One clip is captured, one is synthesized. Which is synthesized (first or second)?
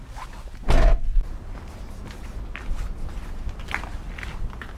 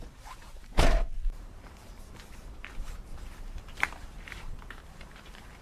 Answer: second